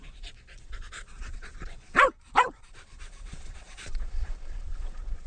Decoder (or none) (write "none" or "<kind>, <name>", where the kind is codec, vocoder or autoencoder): vocoder, Vocos